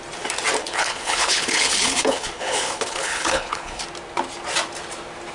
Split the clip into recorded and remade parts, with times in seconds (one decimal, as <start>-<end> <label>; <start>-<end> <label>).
0.0-0.6 recorded; 0.6-3.8 remade; 3.8-5.3 recorded